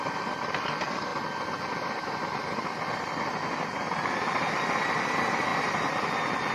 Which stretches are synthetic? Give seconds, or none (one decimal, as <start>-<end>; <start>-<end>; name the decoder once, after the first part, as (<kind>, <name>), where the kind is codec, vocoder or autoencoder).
none